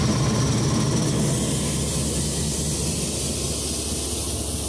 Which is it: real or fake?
real